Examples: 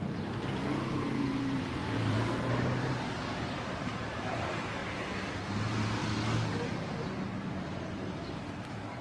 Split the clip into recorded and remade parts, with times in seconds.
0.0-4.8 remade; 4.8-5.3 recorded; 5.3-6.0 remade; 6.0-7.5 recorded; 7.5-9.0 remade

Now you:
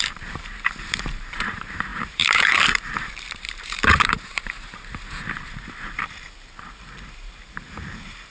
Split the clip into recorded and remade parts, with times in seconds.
0.0-8.3 remade